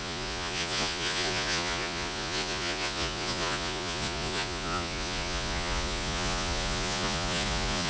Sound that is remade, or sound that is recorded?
remade